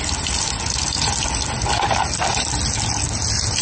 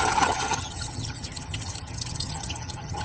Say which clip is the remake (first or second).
second